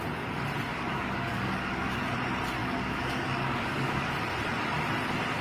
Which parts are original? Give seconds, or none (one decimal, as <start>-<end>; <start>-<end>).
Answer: 0.0-0.7; 2.0-2.6; 4.1-5.4